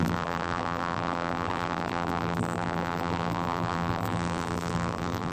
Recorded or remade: remade